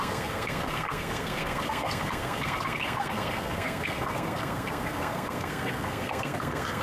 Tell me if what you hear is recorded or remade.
remade